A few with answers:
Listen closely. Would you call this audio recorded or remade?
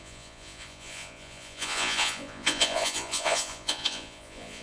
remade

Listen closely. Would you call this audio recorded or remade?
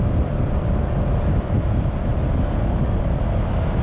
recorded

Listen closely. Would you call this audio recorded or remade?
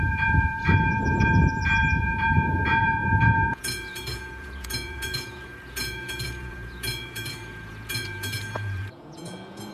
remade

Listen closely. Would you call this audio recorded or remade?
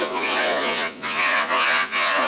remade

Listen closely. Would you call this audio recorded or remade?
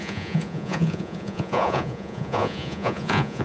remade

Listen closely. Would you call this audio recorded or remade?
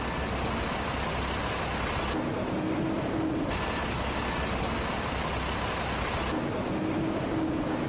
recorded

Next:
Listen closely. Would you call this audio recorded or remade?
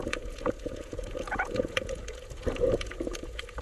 remade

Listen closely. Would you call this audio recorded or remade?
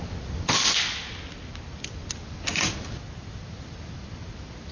recorded